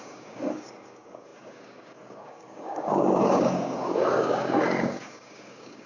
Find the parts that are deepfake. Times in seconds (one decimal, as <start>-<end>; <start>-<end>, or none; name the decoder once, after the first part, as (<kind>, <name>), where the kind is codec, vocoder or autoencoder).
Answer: 0.0-5.9 (codec, DAC)